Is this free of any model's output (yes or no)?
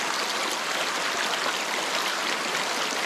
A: yes